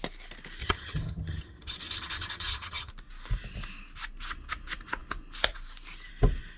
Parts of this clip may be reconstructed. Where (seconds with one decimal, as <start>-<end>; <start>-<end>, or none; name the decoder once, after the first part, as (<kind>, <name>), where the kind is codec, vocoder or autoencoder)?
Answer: 0.6-2.9 (vocoder, HiFi-GAN)